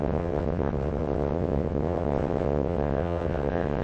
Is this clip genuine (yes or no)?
no